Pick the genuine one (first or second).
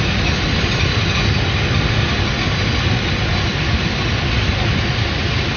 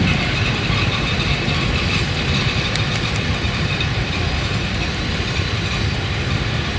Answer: first